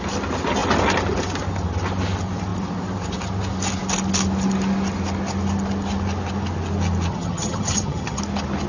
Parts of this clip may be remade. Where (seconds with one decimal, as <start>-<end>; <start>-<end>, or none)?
7.1-8.2